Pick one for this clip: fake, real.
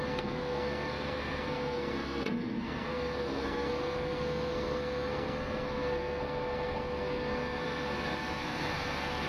fake